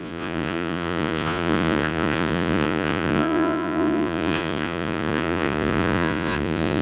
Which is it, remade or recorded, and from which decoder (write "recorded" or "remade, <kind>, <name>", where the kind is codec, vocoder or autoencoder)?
remade, vocoder, Vocos